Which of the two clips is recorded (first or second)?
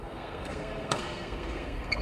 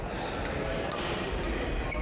second